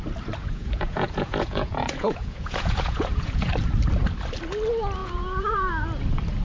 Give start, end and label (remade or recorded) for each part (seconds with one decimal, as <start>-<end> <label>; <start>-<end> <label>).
0.0-0.4 recorded; 0.4-3.5 remade; 3.5-5.0 recorded; 5.0-5.7 remade; 5.7-6.4 recorded